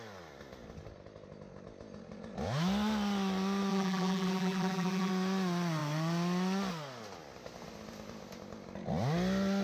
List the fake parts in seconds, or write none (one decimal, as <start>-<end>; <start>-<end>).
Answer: 3.7-5.1